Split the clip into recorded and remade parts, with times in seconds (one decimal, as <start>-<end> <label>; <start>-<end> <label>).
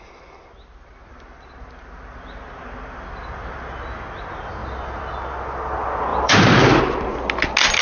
0.0-4.6 recorded; 4.6-5.1 remade; 5.1-6.1 recorded; 6.1-6.8 remade; 6.8-7.8 recorded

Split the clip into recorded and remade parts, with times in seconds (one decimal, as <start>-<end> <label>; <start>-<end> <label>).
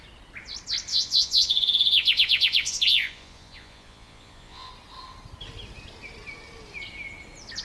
0.0-0.9 recorded; 0.9-4.7 remade; 4.7-7.6 recorded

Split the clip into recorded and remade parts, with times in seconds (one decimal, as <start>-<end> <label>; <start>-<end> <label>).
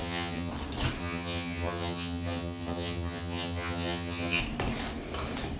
0.0-0.5 remade; 0.5-1.0 recorded; 1.0-4.4 remade; 4.4-5.6 recorded